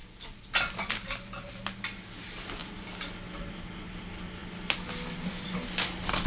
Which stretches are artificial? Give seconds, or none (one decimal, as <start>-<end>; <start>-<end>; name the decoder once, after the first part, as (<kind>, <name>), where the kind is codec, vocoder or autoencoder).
0.0-0.5 (vocoder, BigVGAN v2)